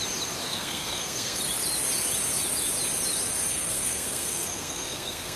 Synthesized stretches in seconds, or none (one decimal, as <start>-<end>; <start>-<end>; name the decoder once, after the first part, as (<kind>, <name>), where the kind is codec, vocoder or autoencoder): 0.4-1.4 (codec, SNAC); 3.5-5.4